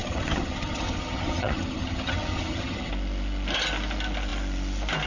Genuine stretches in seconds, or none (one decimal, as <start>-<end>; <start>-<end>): 2.9-5.1